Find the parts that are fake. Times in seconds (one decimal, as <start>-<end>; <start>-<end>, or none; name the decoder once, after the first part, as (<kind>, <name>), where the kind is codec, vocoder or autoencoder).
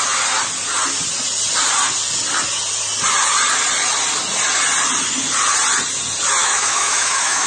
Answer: 6.4-7.5 (autoencoder, DAC-VAE)